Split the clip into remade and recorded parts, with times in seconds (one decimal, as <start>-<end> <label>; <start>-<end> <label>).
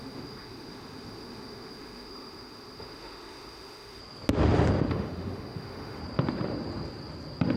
0.0-4.0 remade; 4.0-4.9 recorded; 4.9-6.0 remade; 6.0-7.6 recorded